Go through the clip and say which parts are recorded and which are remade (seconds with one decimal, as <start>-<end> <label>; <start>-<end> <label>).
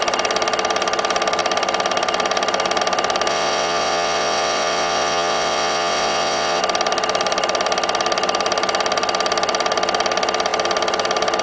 0.0-3.3 recorded; 3.3-6.6 remade; 6.6-11.4 recorded